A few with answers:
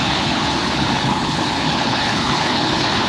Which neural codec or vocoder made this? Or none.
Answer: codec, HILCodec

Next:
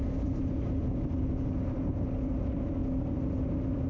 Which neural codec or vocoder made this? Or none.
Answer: none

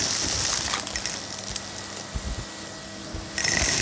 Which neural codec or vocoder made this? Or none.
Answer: none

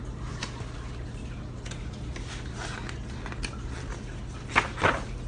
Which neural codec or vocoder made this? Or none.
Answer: none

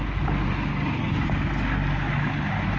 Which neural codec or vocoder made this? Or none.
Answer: none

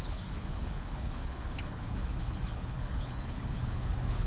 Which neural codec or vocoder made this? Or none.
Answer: codec, HILCodec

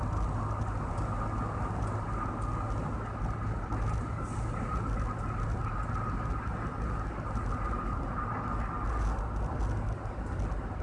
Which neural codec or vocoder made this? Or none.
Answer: none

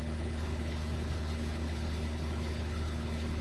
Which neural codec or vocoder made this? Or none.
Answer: codec, HILCodec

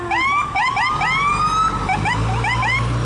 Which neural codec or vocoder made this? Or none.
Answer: none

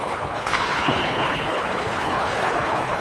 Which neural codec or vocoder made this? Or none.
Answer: codec, HILCodec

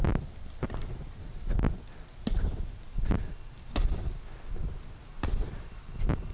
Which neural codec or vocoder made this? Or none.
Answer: none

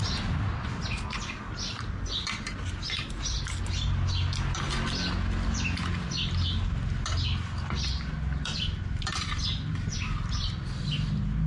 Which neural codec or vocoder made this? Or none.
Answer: none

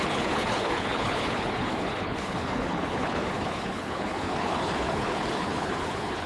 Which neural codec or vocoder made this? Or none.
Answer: codec, HILCodec